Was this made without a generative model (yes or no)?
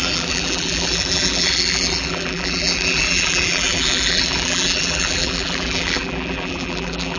no